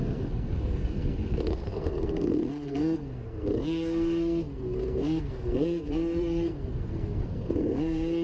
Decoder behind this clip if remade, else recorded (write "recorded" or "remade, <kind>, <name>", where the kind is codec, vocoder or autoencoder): remade, codec, SNAC